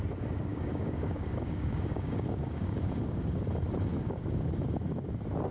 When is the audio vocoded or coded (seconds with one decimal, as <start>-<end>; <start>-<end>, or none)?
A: 0.5-3.4; 3.9-4.6